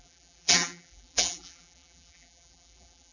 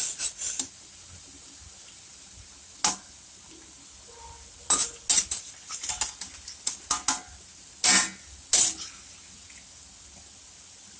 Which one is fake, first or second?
first